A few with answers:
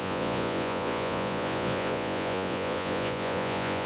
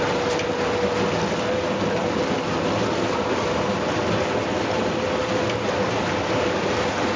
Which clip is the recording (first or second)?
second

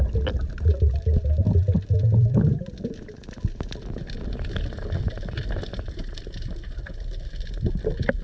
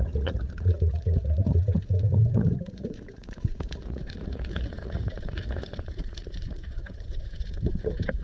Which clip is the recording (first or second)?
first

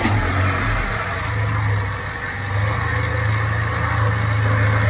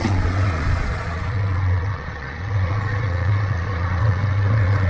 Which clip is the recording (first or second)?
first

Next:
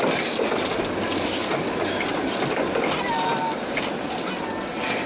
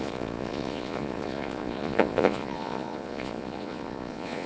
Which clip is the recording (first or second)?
first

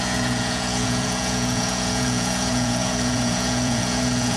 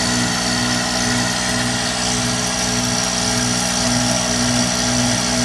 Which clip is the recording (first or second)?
second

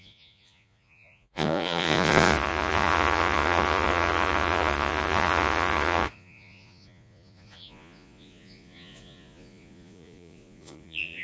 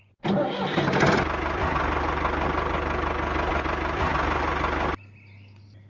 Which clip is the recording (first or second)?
second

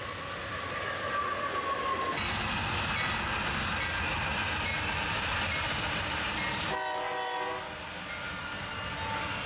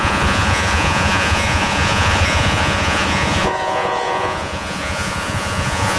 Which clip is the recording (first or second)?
first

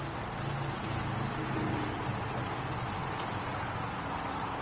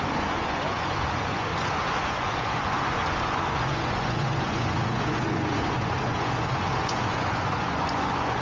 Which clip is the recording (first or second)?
first